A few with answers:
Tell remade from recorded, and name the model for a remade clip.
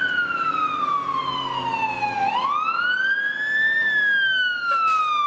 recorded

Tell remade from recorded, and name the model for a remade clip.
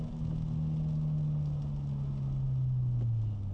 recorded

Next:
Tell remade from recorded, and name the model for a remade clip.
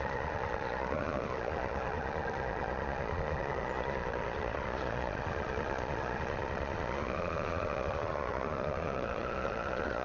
remade, vocoder, Vocos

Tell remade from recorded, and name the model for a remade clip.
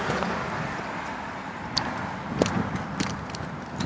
recorded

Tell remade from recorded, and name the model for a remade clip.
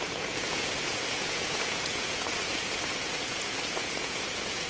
remade, vocoder, Vocos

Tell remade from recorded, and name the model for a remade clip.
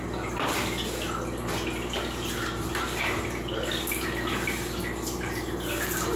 recorded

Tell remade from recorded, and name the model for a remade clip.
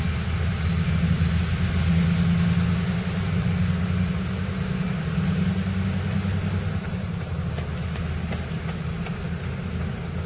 recorded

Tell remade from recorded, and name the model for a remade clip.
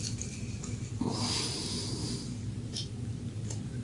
recorded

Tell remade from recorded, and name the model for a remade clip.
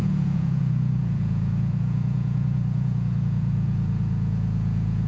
remade, vocoder, Vocos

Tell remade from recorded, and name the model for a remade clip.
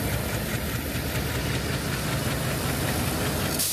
recorded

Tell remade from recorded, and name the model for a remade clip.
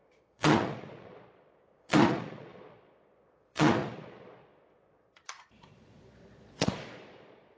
remade, vocoder, Vocos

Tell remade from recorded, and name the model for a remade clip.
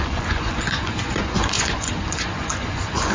remade, vocoder, Vocos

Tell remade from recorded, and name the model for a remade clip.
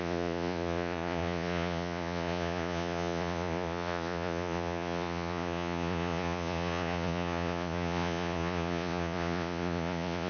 remade, vocoder, Vocos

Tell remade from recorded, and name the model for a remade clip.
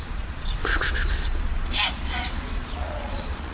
remade, vocoder, Vocos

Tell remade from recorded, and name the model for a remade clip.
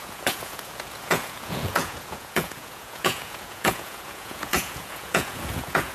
remade, vocoder, Vocos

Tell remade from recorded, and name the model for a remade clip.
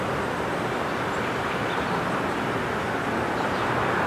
recorded